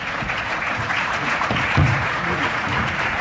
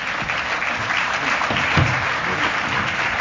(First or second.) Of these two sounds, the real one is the second